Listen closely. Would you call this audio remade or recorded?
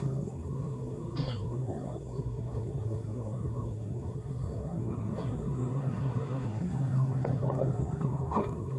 remade